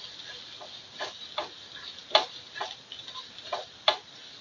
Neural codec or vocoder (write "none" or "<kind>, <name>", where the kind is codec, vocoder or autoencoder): none